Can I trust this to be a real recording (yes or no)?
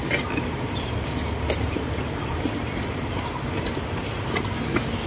yes